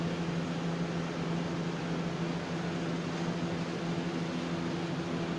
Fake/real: real